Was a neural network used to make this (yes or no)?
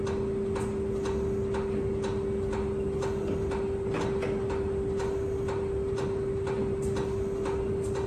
no